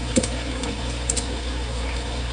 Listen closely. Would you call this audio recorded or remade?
remade